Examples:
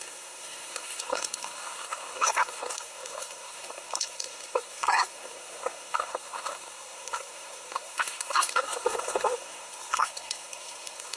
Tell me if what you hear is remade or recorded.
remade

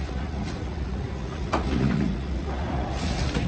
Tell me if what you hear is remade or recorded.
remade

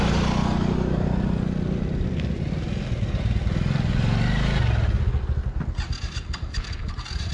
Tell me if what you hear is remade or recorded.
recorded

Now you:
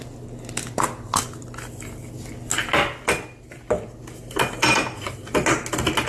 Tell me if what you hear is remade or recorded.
recorded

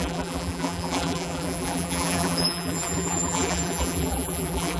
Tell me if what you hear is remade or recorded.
remade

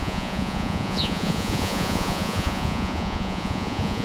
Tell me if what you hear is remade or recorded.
remade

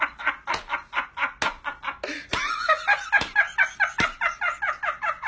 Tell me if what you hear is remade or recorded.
recorded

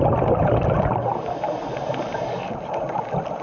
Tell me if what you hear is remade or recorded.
recorded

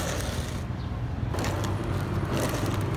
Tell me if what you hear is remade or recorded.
recorded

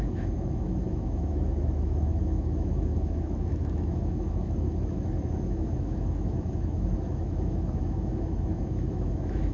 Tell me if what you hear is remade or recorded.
remade